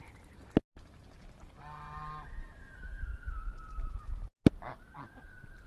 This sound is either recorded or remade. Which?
recorded